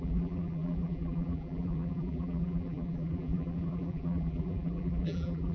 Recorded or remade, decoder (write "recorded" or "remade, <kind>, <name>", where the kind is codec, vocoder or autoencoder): remade, vocoder, BigVGAN v2